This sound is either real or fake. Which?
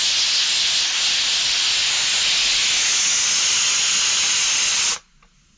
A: real